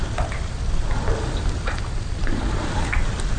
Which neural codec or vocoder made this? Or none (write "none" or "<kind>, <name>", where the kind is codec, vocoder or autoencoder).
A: none